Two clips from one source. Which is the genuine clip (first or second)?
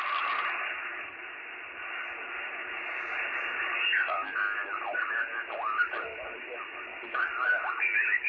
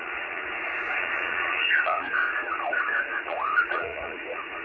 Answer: first